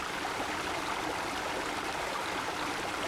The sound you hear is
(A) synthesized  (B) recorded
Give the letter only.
B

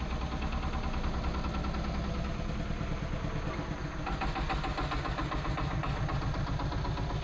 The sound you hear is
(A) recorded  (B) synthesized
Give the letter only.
A